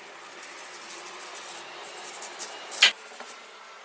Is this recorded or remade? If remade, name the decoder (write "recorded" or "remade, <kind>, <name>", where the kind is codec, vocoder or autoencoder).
recorded